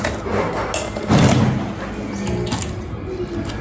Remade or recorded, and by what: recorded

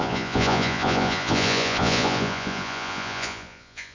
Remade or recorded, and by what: remade, vocoder, Vocos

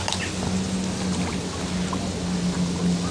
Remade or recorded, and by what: recorded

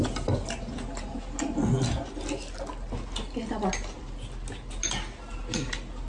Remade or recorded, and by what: recorded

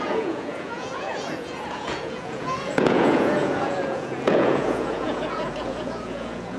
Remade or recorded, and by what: remade, vocoder, Vocos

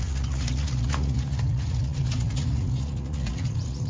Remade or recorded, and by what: remade, vocoder, Vocos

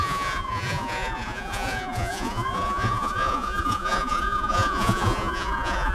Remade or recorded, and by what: remade, vocoder, Vocos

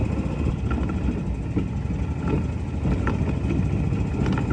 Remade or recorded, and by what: recorded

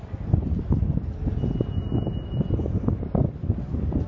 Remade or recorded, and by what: recorded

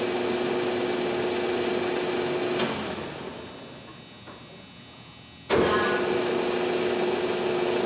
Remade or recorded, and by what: recorded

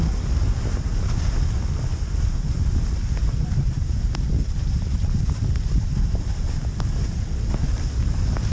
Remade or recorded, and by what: recorded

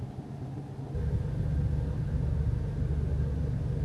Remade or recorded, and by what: recorded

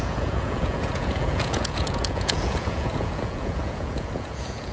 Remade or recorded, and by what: remade, vocoder, Vocos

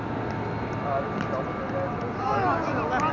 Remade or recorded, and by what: recorded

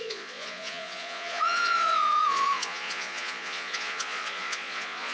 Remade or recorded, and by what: remade, vocoder, Vocos